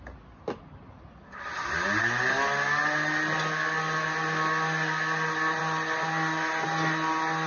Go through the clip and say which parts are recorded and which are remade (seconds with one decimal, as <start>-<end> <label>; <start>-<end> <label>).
0.0-7.5 recorded